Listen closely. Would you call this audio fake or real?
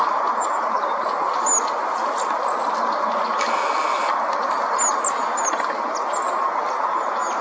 real